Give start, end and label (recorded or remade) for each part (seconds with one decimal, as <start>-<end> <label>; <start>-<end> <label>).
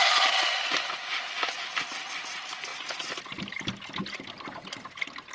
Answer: 0.0-5.3 recorded